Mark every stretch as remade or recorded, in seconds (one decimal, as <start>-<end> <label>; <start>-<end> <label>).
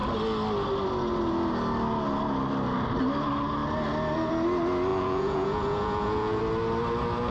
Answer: 0.0-4.9 recorded; 4.9-6.4 remade; 6.4-7.3 recorded